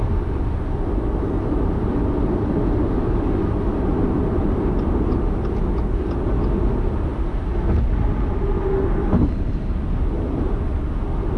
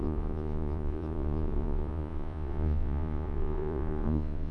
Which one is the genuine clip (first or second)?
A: first